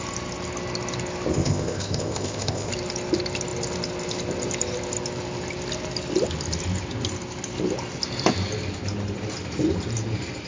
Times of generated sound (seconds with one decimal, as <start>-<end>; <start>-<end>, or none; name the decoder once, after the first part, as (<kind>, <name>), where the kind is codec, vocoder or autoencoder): 1.3-2.7 (codec, ZipCodec)